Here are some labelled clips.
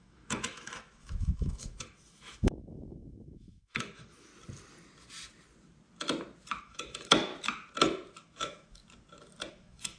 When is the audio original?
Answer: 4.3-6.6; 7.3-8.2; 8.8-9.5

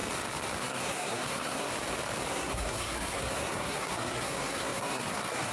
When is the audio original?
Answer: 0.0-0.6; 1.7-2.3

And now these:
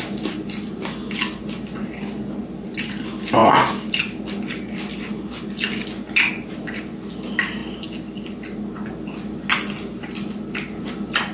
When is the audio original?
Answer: 0.0-11.3

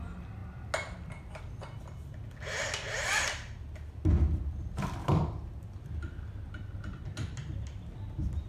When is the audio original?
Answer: 0.0-8.5